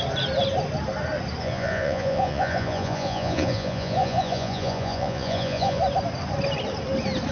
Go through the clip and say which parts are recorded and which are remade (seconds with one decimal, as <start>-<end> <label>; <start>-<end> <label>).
0.0-1.4 recorded; 1.4-5.8 remade; 5.8-7.3 recorded